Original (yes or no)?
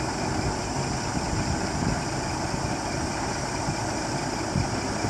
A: yes